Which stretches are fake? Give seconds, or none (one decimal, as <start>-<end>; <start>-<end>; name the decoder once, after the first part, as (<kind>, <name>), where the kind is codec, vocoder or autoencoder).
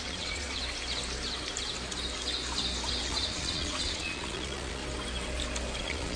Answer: 0.0-0.6 (vocoder, Vocos); 3.1-4.8; 5.8-6.2